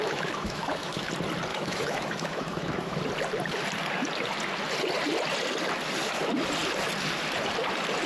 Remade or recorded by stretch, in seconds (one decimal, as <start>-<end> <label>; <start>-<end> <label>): 0.0-1.1 remade; 1.1-1.5 recorded; 1.5-3.0 remade; 3.0-8.1 recorded